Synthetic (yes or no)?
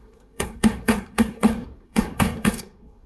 yes